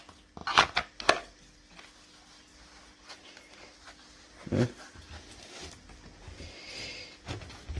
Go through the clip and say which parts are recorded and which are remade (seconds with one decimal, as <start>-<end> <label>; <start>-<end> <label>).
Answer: 0.0-7.8 recorded